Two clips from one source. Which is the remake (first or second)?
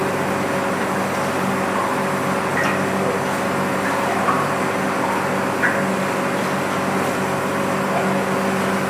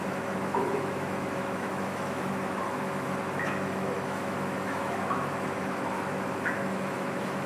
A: second